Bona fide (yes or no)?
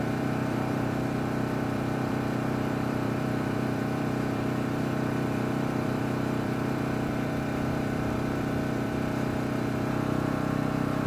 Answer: no